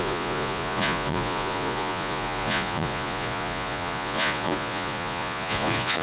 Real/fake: fake